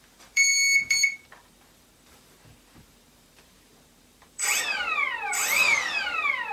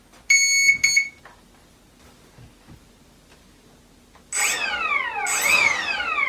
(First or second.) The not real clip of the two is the first